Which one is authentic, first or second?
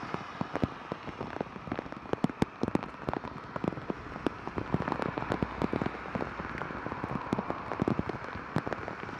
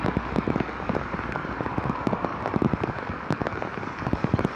first